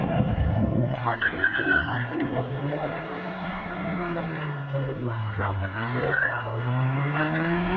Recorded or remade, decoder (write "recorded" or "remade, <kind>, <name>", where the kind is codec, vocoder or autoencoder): remade, codec, SNAC